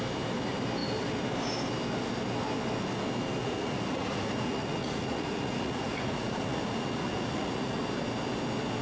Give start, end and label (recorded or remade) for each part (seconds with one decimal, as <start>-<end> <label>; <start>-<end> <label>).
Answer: 0.0-3.4 recorded; 3.4-7.8 remade; 7.8-8.8 recorded